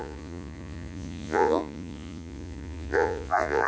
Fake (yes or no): yes